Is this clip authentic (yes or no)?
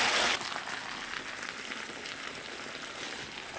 yes